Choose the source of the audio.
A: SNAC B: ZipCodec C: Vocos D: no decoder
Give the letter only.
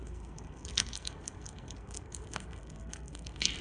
A